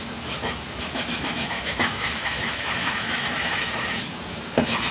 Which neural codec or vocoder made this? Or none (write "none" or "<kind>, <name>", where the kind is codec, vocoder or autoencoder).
autoencoder, DAC-VAE